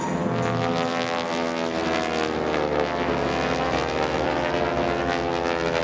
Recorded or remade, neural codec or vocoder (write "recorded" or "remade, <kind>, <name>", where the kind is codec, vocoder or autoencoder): recorded